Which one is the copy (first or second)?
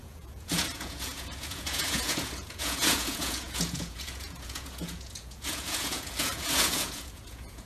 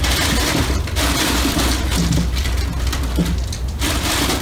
first